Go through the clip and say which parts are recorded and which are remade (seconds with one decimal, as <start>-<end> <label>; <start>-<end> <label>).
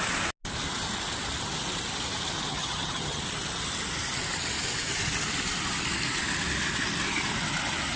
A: 0.0-2.5 recorded; 2.5-3.2 remade; 3.2-8.0 recorded